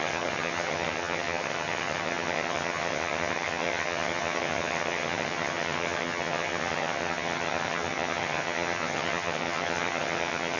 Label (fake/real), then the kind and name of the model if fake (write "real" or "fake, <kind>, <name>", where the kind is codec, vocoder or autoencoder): fake, vocoder, HiFi-GAN